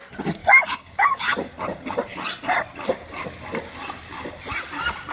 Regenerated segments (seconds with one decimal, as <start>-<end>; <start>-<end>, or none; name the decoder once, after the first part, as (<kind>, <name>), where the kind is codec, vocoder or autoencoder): 0.4-1.3 (codec, DAC)